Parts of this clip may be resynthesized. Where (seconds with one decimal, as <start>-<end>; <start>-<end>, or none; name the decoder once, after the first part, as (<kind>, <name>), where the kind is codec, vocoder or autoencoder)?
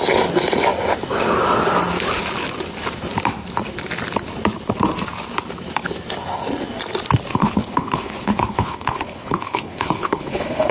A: 7.3-10.7 (codec, HILCodec)